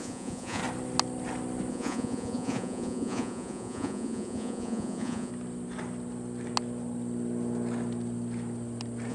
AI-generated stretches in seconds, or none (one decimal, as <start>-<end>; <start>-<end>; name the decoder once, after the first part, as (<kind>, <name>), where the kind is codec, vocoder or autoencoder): 0.0-0.6 (vocoder, Vocos); 1.7-5.3